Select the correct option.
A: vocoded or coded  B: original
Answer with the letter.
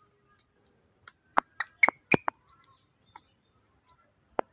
B